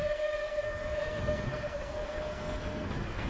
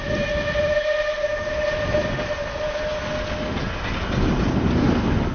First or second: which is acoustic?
second